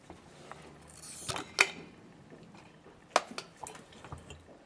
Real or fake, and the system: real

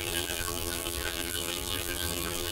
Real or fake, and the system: fake, vocoder, BigVGAN v2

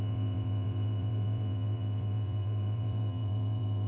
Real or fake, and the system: fake, vocoder, WaveNeXt